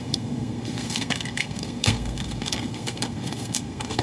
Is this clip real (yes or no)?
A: no